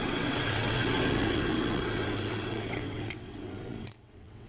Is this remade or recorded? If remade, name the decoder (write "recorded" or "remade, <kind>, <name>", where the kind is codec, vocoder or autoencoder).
remade, vocoder, WaveNeXt